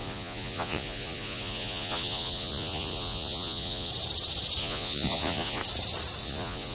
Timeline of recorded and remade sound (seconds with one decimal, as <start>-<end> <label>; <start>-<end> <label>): 0.0-3.9 remade; 3.9-4.6 recorded; 4.6-5.6 remade; 5.6-6.2 recorded; 6.2-6.7 remade